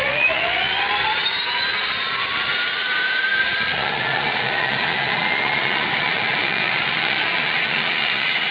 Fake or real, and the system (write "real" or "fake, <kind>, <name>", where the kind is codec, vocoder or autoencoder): fake, vocoder, Vocos